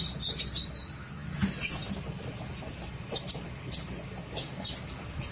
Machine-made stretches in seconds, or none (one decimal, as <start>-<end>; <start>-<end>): none